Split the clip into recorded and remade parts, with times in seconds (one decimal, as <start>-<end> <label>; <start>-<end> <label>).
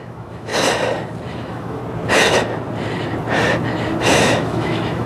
0.0-0.5 remade; 0.5-1.3 recorded; 1.3-1.8 remade; 1.8-4.0 recorded; 4.0-5.1 remade